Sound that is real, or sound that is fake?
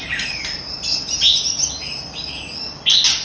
real